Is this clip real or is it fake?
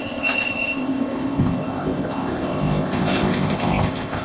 fake